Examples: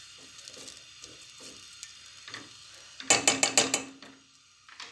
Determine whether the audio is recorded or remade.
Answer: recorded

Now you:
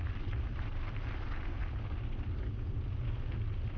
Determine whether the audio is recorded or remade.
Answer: recorded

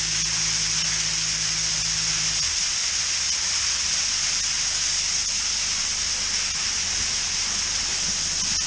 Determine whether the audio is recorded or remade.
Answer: recorded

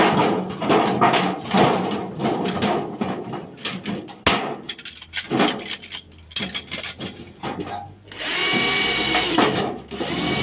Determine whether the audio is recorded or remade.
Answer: recorded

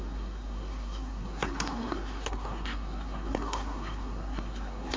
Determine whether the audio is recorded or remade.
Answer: remade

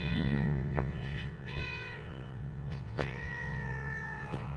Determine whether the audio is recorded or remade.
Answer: remade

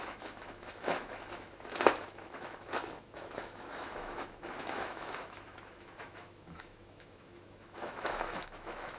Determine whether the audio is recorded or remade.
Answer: remade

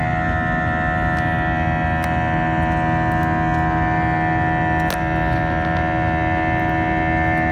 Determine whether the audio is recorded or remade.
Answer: recorded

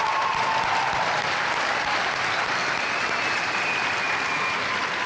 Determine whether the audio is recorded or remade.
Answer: recorded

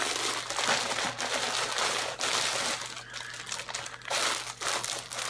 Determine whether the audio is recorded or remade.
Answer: recorded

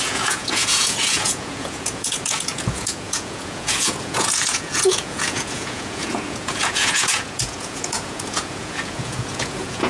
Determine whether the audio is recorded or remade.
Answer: remade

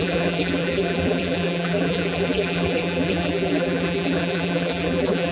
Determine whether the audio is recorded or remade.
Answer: remade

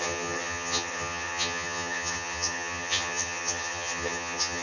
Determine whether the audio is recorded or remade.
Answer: remade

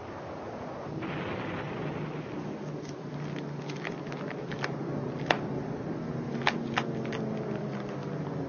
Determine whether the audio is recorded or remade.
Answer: recorded